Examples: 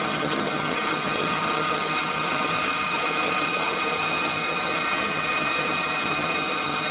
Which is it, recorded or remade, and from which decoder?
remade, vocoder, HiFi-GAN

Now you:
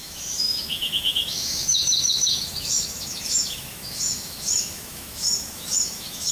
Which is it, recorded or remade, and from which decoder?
remade, autoencoder, DAC-VAE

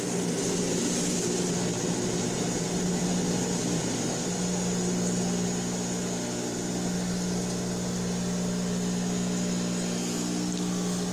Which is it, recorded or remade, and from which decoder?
recorded